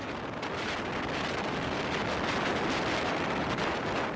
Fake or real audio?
real